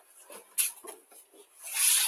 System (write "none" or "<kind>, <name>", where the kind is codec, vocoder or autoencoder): none